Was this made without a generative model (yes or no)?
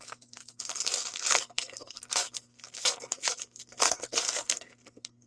no